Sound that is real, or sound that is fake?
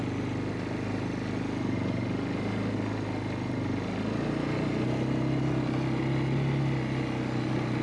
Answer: real